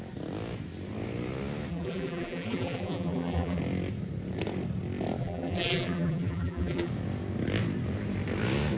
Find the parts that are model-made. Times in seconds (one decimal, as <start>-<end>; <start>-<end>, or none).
1.7-3.6; 5.2-6.9